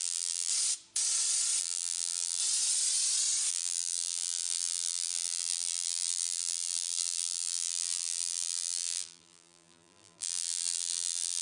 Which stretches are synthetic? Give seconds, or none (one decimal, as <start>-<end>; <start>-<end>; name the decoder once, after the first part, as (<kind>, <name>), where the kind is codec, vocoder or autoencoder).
0.0-0.5 (vocoder, BigVGAN v2); 1.6-2.4; 3.5-11.4